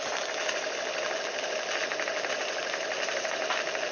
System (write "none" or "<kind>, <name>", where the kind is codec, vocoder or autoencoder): none